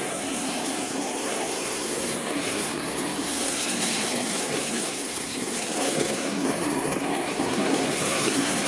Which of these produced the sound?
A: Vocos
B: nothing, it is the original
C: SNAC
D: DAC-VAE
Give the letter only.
C